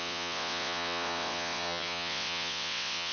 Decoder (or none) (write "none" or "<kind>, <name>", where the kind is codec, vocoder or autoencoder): vocoder, WaveNeXt